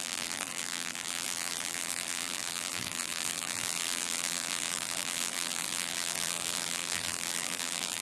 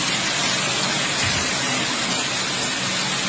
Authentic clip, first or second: second